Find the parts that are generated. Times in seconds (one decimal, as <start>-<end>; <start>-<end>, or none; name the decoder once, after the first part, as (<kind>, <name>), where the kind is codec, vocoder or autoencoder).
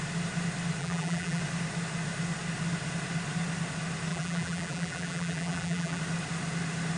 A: 0.8-1.4 (vocoder, BigVGAN v2); 4.1-6.0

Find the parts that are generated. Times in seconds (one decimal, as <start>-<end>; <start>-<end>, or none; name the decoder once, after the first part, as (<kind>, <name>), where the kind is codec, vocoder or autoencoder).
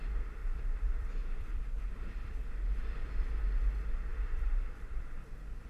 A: 0.4-2.5 (vocoder, BigVGAN v2); 4.1-5.0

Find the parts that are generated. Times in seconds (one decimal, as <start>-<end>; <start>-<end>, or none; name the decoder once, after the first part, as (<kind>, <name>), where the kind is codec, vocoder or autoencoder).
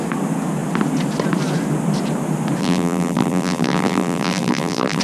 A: 2.6-5.0 (vocoder, BigVGAN v2)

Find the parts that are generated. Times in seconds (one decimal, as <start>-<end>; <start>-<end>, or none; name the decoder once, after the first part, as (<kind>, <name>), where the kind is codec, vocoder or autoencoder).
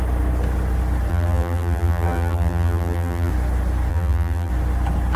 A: 1.1-3.3 (vocoder, BigVGAN v2); 3.9-4.5